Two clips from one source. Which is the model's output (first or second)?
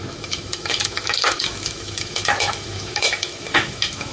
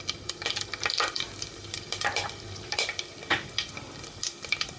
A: first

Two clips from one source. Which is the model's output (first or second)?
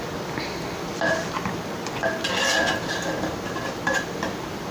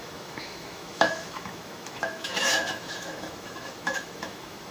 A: second